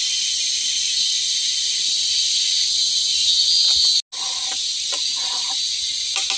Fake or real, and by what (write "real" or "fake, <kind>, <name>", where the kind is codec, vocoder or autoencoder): real